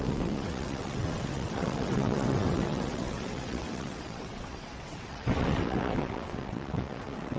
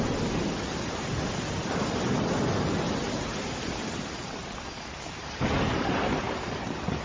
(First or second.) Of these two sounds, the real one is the second